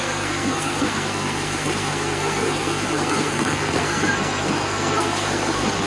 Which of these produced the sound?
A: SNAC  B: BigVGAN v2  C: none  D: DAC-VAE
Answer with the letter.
A